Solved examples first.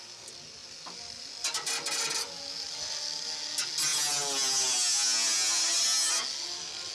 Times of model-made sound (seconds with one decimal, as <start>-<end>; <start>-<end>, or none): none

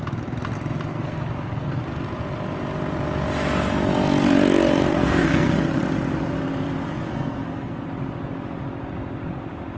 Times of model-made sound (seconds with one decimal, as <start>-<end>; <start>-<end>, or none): 0.9-1.8; 4.9-5.8; 7.1-7.8

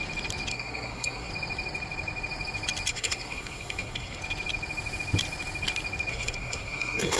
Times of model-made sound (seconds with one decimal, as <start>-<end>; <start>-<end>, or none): 0.5-1.3; 2.9-4.2; 6.1-7.2